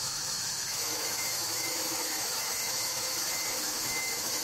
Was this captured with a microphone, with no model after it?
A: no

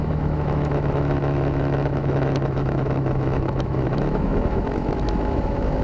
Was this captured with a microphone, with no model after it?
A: no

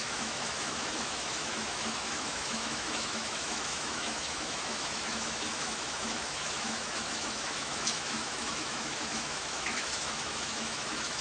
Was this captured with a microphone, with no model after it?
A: no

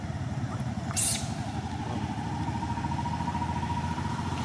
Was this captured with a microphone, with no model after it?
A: yes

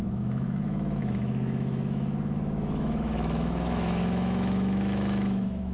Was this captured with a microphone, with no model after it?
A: no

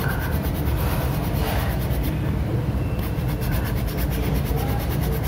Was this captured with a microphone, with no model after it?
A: yes